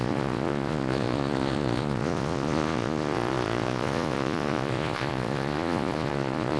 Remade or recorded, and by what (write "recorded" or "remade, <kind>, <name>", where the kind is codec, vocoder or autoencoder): remade, vocoder, Vocos